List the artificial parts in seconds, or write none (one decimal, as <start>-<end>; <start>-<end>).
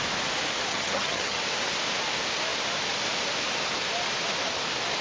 0.7-1.4